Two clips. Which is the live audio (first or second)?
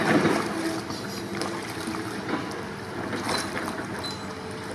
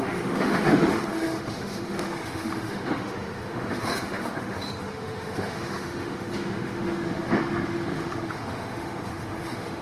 first